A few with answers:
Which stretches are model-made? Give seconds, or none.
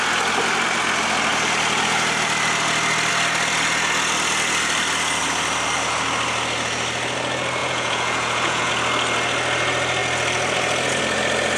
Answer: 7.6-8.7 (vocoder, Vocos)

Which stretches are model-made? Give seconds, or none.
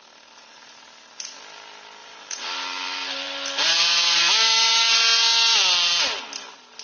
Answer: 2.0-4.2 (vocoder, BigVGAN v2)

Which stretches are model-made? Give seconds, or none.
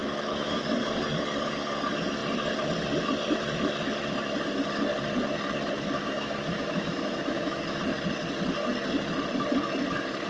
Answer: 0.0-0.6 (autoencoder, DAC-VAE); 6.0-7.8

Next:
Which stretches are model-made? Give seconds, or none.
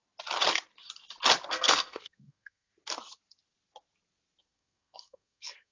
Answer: 1.5-2.7 (codec, SNAC); 4.4-5.7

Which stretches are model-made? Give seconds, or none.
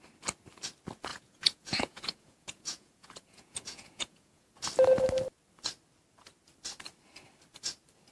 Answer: 1.1-4.5 (vocoder, Vocos)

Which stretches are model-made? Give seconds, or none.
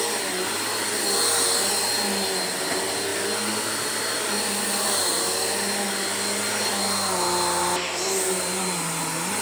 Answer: 3.1-7.6 (vocoder, BigVGAN v2)